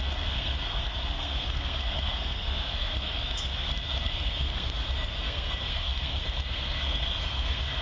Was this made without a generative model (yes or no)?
no